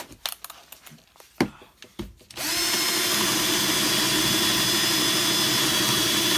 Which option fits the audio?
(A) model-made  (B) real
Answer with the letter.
B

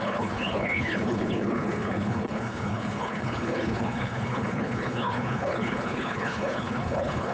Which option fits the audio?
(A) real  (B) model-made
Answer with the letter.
B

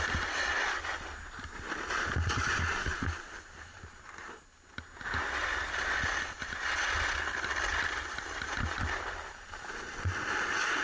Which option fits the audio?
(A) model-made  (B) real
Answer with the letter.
B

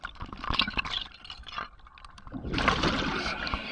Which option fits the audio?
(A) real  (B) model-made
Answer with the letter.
A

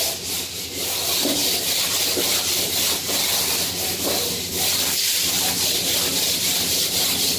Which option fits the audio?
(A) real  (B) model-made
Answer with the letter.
B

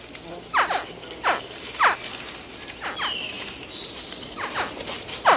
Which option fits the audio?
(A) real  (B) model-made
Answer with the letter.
A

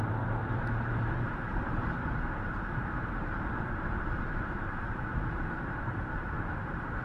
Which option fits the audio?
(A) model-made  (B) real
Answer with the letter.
A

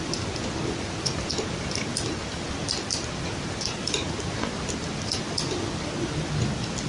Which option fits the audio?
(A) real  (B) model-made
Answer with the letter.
A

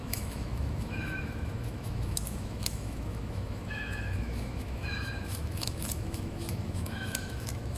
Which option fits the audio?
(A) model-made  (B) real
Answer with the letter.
A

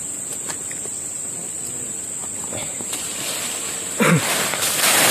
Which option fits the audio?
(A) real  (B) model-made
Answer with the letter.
A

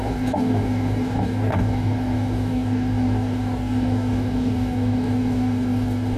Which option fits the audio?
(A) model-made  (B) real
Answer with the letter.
A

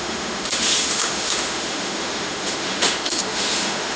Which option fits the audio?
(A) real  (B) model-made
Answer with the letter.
B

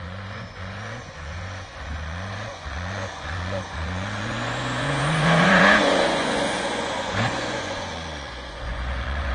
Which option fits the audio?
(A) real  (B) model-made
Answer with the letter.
B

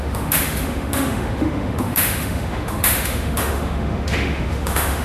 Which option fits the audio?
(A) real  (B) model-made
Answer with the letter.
B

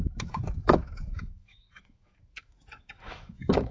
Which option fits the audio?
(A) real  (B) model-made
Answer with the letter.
B